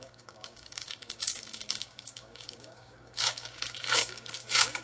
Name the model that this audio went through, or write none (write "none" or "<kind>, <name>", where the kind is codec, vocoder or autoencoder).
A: codec, DAC